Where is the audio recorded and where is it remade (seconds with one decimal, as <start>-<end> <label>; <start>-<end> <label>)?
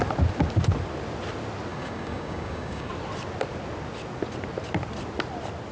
0.0-1.7 recorded; 1.7-2.9 remade; 2.9-5.7 recorded